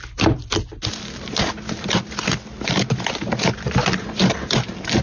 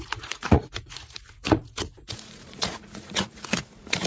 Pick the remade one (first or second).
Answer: second